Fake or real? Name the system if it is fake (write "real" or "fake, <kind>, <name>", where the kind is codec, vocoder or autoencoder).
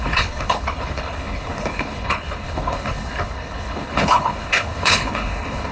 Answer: fake, codec, HILCodec